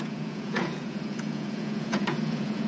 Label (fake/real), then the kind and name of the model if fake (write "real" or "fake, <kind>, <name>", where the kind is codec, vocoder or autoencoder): fake, vocoder, Vocos